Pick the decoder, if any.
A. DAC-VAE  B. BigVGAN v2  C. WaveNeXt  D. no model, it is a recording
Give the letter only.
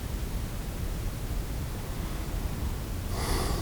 D